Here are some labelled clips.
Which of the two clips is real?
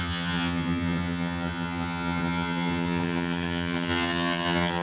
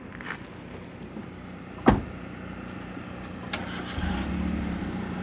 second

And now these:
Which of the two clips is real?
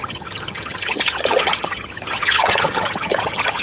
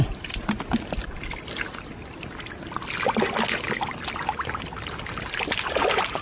second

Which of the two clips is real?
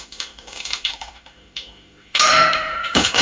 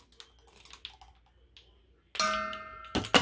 second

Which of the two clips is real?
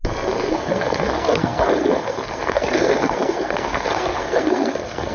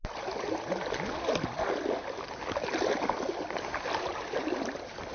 second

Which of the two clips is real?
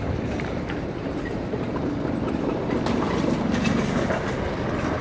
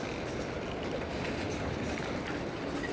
second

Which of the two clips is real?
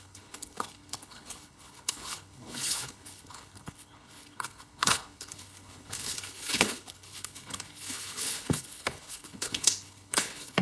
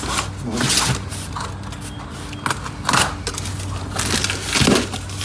second